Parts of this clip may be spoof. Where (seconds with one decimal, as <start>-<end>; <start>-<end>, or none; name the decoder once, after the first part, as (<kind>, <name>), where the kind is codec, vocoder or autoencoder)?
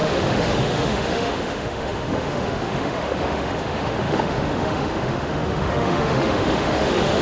0.0-7.2 (autoencoder, DAC-VAE)